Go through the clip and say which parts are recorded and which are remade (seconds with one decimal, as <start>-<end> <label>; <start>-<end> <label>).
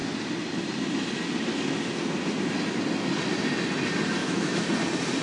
0.0-4.2 recorded; 4.2-4.7 remade; 4.7-5.2 recorded